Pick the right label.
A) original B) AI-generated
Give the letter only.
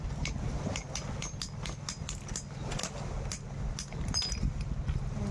A